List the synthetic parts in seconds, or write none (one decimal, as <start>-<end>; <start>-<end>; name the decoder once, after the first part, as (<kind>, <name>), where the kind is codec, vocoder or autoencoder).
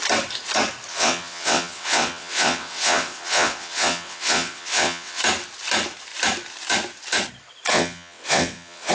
0.9-5.2 (vocoder, WaveNeXt); 7.7-8.9